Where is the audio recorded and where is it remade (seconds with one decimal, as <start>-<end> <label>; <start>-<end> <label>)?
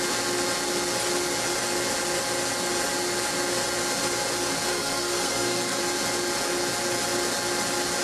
0.0-4.7 recorded; 4.7-5.8 remade; 5.8-8.0 recorded